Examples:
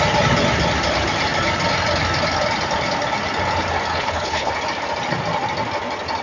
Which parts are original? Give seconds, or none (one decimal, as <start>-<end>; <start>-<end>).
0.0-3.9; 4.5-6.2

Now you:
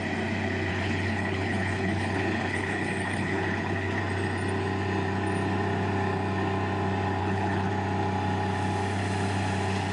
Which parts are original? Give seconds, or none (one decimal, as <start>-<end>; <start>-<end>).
0.0-0.7; 4.0-7.2; 7.7-9.9

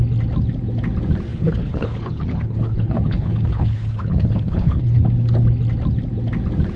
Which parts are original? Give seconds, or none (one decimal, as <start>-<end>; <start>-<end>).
0.0-1.3; 5.0-6.8

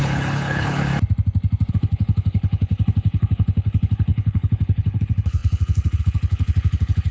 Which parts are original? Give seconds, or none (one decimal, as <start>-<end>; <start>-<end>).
0.9-1.7

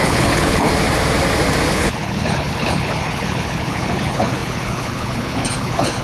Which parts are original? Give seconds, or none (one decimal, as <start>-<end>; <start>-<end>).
0.7-1.7

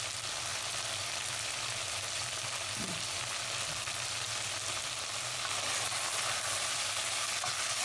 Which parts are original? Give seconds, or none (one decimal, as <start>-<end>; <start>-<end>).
0.0-7.8

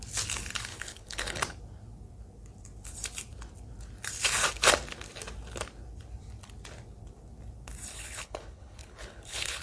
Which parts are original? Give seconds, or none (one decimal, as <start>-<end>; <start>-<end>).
0.0-0.7; 1.4-7.9

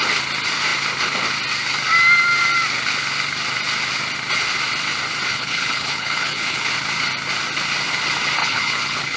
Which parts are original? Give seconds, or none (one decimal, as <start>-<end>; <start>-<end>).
0.0-5.3; 6.7-8.4